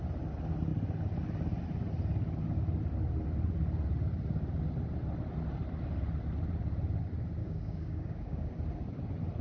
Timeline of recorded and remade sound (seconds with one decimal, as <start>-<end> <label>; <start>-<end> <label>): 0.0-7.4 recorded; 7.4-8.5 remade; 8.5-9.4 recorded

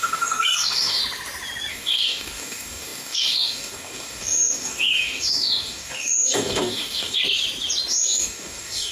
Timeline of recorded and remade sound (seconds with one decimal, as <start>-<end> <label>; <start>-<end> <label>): 0.0-1.0 remade; 1.0-1.7 recorded; 1.7-7.2 remade; 7.2-7.9 recorded; 7.9-8.9 remade

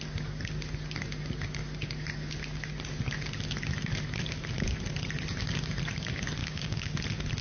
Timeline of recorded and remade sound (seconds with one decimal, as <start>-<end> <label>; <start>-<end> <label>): 0.0-6.4 recorded; 6.4-6.9 remade; 6.9-7.4 recorded

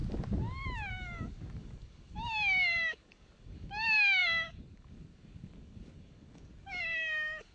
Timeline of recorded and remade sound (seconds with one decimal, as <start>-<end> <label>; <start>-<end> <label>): 0.0-0.9 recorded; 0.9-7.5 remade

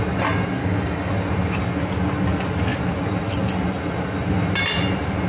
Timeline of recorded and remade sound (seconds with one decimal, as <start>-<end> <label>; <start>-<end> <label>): 0.0-0.6 recorded; 0.6-1.1 remade; 1.1-5.3 recorded

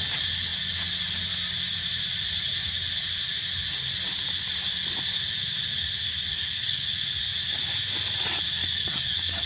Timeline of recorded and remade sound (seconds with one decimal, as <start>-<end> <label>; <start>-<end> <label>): 0.0-6.3 recorded; 6.3-6.8 remade; 6.8-8.6 recorded; 8.6-9.5 remade